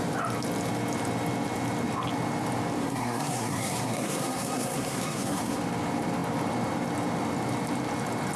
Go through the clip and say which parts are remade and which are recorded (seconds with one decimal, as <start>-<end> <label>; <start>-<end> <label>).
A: 0.0-2.8 recorded; 2.8-5.6 remade; 5.6-8.4 recorded